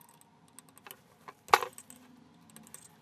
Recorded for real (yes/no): yes